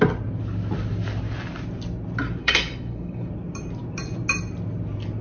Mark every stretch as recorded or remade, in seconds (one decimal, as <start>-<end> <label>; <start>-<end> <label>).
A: 0.0-2.4 recorded; 2.4-3.3 remade; 3.3-5.2 recorded